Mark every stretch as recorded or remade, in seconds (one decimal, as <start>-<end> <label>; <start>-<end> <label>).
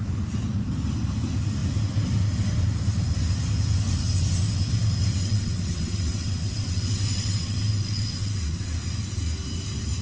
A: 0.0-5.2 recorded; 5.2-8.8 remade; 8.8-10.0 recorded